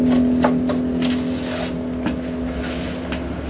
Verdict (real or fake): real